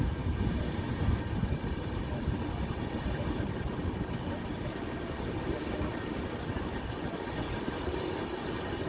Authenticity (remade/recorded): recorded